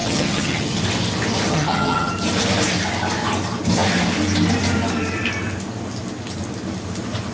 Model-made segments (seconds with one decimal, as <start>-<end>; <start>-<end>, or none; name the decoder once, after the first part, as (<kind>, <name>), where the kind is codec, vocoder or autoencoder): 0.0-0.8 (vocoder, HiFi-GAN); 1.5-2.1